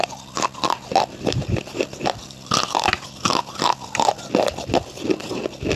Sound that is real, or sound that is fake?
real